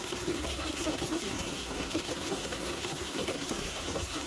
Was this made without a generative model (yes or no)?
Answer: no